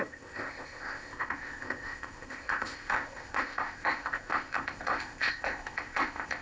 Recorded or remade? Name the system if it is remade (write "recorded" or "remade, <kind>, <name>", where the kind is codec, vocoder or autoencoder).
remade, codec, ZipCodec